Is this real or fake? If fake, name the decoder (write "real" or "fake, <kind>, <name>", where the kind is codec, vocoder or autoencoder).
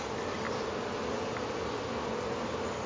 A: real